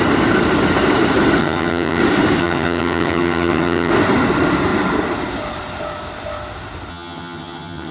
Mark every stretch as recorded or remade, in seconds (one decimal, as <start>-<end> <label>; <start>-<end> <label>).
0.0-1.4 recorded; 1.4-2.0 remade; 2.0-2.4 recorded; 2.4-3.9 remade; 3.9-6.9 recorded; 6.9-7.9 remade